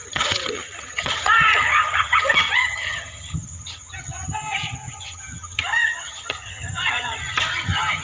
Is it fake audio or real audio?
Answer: fake